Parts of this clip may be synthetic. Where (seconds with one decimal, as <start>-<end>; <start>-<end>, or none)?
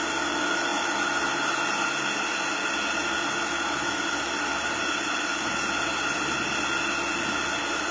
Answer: none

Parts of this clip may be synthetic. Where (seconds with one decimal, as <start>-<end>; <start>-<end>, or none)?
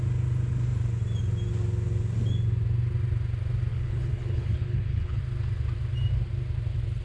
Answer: 3.7-5.2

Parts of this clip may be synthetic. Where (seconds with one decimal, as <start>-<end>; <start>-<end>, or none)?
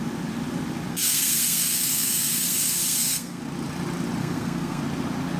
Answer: 0.9-3.4; 4.2-4.8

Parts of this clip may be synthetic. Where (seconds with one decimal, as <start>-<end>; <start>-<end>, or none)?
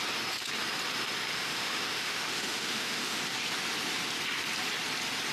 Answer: 1.3-3.2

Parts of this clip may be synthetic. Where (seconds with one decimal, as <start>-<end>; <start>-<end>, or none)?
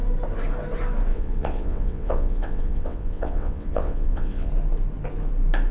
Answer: 1.1-4.5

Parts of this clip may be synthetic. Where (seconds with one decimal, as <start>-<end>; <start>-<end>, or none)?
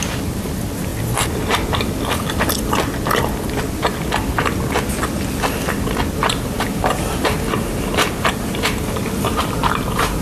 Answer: 6.2-10.2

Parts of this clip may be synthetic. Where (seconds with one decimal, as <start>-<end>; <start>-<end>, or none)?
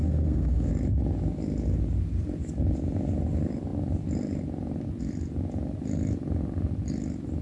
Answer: 0.0-0.7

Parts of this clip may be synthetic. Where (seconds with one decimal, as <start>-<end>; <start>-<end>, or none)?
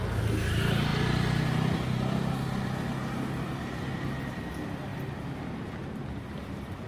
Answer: none